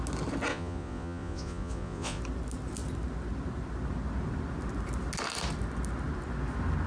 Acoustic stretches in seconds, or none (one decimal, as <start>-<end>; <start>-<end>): 0.0-0.5; 2.2-6.9